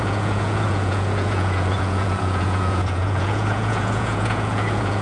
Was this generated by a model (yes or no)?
yes